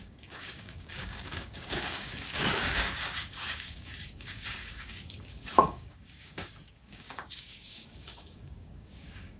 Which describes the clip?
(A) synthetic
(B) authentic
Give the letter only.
A